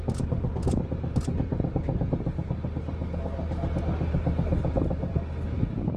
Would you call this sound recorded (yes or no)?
yes